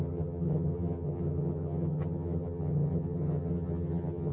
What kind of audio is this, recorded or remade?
remade